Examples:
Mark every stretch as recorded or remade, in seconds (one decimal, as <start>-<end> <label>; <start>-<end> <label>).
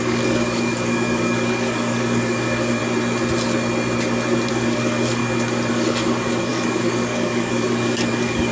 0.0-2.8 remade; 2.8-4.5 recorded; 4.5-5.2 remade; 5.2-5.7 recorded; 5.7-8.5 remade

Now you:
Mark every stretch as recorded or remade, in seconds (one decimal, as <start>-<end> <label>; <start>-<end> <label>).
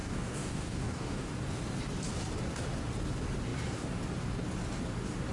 0.0-1.3 remade; 1.3-5.3 recorded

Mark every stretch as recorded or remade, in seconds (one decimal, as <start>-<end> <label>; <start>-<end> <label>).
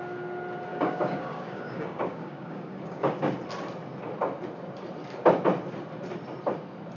0.0-0.7 recorded; 0.7-3.3 remade; 3.3-7.0 recorded